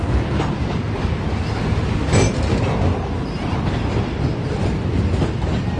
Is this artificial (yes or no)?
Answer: no